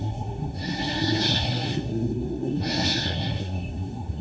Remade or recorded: remade